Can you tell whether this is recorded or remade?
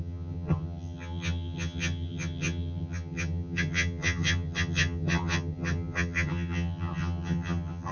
remade